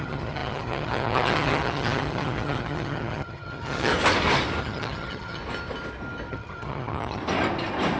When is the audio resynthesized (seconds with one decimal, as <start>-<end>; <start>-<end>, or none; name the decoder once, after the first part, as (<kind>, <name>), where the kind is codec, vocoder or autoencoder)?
0.0-3.9 (vocoder, HiFi-GAN); 4.6-5.4; 6.3-7.2